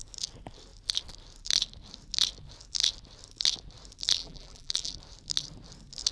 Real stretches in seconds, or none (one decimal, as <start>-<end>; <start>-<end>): 0.0-4.2; 4.9-6.1